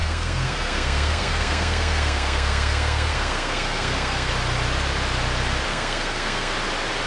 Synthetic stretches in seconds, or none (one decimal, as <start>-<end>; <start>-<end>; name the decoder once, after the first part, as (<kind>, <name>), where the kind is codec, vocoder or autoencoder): 0.0-4.3 (codec, SNAC); 5.7-6.5